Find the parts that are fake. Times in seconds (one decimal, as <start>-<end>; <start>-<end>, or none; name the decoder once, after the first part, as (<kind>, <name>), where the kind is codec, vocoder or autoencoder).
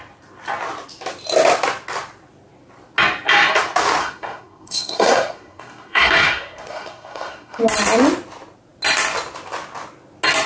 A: 4.0-7.6 (codec, SNAC)